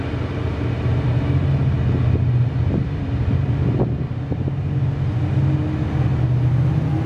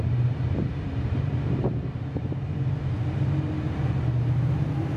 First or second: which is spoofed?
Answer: second